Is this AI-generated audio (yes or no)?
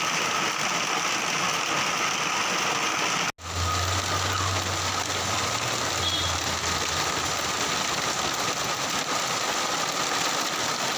no